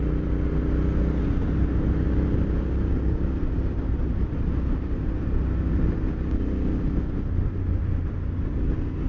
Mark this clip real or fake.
real